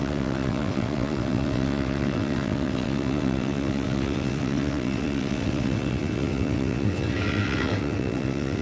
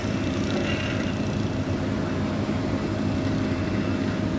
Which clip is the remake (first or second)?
first